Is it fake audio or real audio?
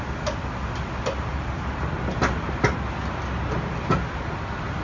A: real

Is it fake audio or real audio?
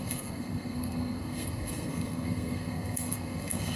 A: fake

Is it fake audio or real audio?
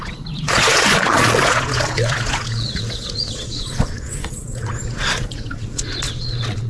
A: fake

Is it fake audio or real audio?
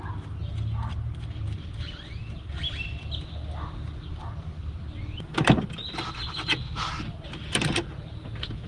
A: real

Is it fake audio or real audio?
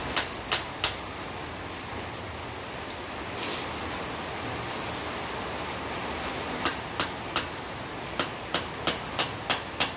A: real